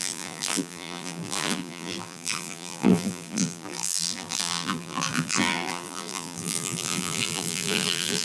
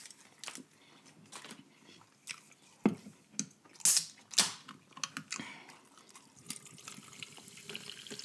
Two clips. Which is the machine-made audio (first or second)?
first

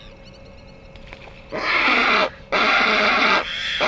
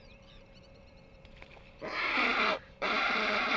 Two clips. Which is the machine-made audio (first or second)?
second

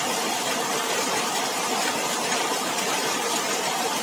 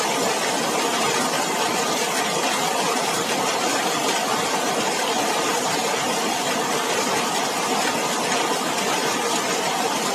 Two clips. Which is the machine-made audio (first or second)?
first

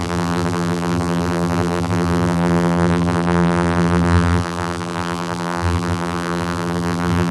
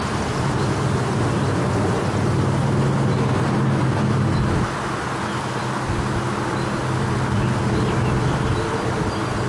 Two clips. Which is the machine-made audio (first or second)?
first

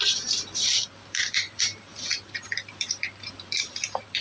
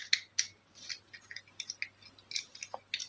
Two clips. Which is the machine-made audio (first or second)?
first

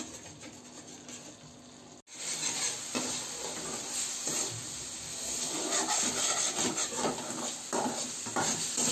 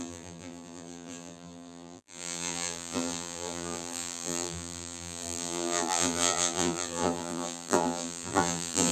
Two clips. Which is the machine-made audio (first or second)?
second